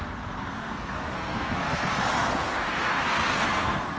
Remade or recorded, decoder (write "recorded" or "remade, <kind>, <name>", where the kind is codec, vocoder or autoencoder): remade, codec, SNAC